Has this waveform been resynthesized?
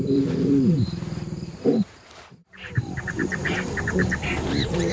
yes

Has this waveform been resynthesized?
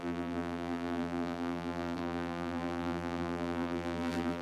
yes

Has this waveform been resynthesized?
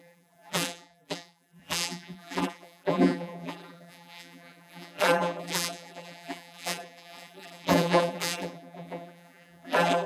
yes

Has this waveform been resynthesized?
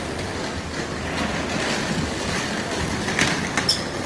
no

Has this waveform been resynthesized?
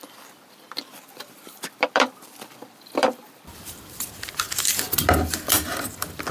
yes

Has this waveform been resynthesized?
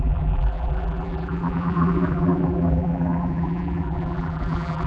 yes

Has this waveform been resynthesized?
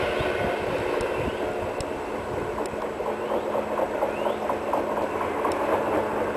no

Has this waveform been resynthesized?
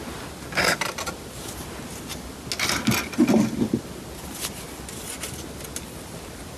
no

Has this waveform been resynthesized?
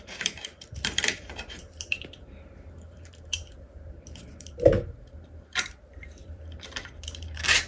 yes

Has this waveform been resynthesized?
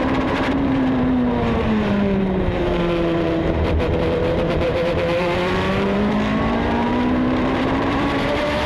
yes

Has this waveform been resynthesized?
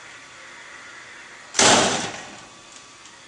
yes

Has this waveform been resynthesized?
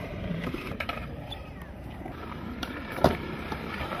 yes